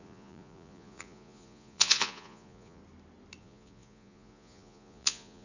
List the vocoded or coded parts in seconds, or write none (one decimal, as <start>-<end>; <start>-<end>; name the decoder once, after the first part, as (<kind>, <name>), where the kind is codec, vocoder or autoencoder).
0.0-2.8 (vocoder, Vocos); 3.4-5.4